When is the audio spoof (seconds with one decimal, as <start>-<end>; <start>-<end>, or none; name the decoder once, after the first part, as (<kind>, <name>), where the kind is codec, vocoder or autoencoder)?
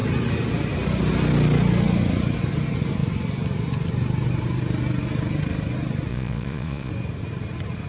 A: 6.1-6.9 (vocoder, Vocos)